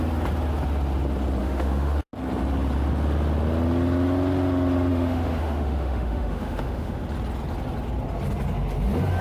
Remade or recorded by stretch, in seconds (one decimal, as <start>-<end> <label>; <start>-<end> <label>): 0.0-1.4 recorded; 1.4-2.1 remade; 2.1-4.9 recorded; 4.9-7.0 remade; 7.0-9.2 recorded